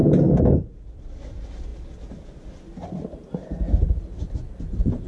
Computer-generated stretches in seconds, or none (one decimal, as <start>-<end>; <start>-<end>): none

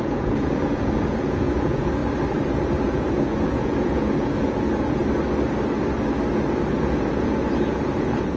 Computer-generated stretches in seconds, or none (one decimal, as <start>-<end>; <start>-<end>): 0.0-2.0; 2.8-5.0; 6.7-8.4

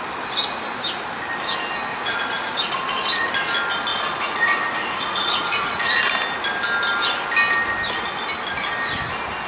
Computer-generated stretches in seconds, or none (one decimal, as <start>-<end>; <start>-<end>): 1.9-3.3; 3.9-5.9

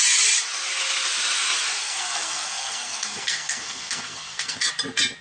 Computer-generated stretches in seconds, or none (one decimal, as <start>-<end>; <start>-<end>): 1.8-4.7

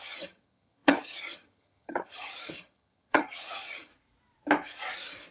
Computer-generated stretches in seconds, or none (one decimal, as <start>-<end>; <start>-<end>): 0.0-3.9

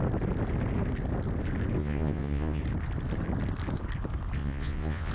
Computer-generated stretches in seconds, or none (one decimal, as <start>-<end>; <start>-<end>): 1.8-2.6; 4.4-5.1

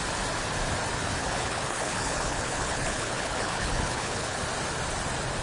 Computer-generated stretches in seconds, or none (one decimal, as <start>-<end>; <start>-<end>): 1.2-4.4